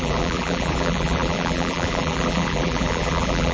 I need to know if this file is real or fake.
fake